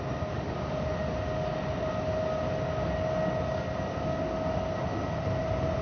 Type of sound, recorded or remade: recorded